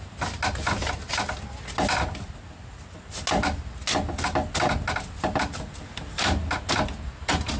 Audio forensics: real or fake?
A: real